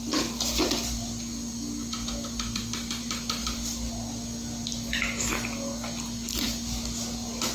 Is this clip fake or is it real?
real